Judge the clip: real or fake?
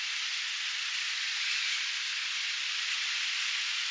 real